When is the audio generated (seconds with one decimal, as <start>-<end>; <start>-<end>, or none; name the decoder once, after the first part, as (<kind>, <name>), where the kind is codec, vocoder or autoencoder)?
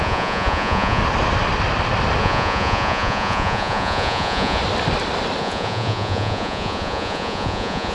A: 0.0-1.0 (vocoder, Vocos); 2.2-4.6; 5.4-7.9